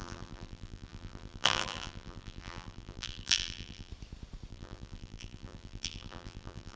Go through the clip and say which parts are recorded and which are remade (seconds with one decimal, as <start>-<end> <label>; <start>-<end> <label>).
0.0-3.9 remade; 3.9-4.5 recorded; 4.5-6.8 remade